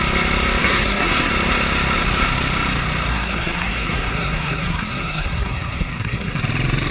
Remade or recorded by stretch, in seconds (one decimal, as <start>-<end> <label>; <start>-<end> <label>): 0.0-0.6 recorded; 0.6-1.3 remade; 1.3-3.1 recorded; 3.1-6.4 remade; 6.4-6.9 recorded